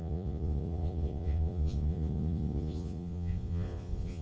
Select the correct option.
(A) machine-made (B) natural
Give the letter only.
A